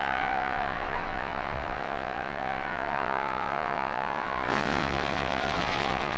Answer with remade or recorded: remade